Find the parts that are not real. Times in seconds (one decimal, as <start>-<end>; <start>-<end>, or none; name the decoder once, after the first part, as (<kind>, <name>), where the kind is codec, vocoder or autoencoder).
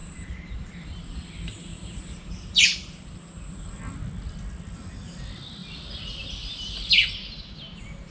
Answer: 0.0-3.8 (vocoder, BigVGAN v2)